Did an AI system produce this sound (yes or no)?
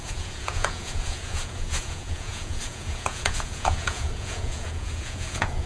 yes